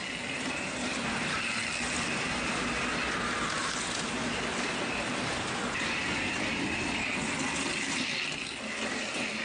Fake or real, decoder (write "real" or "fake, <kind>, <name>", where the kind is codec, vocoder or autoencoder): real